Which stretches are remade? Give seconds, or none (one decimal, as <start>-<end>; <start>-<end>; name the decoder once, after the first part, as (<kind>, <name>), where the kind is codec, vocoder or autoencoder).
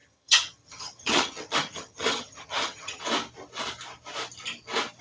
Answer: 0.0-3.0 (vocoder, HiFi-GAN)